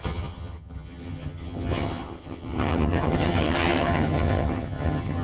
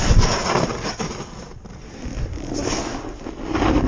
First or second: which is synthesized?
first